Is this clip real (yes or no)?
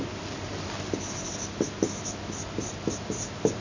yes